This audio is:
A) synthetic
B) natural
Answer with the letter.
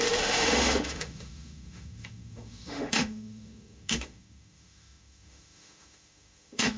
A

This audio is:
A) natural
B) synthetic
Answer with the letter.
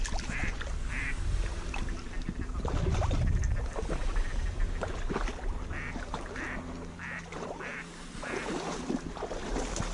A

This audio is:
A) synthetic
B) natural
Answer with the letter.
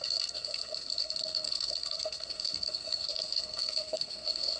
A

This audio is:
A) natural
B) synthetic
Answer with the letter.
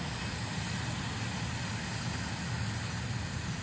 A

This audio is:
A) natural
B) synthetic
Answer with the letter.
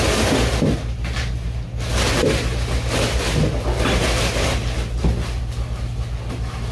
A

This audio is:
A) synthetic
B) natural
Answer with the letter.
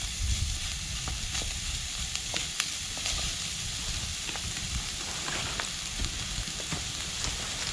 B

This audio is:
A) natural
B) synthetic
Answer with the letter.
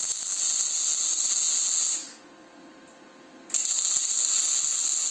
A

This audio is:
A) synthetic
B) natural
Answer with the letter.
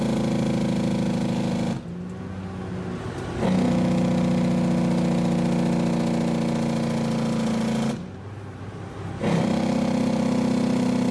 B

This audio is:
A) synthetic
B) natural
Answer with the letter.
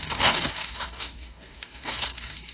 A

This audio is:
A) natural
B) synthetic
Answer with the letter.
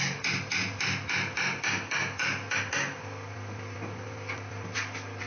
A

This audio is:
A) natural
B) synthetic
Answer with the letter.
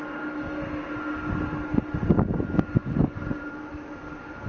A